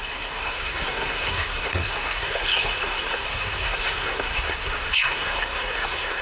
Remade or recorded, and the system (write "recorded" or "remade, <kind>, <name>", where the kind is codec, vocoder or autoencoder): remade, codec, SNAC